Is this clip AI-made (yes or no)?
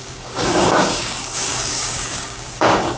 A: yes